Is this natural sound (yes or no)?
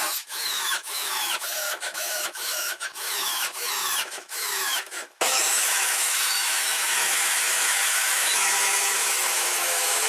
no